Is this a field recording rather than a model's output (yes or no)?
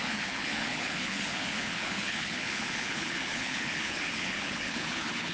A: no